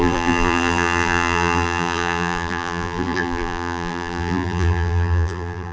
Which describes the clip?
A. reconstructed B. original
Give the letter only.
A